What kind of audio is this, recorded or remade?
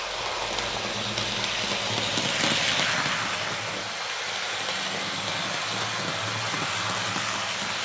recorded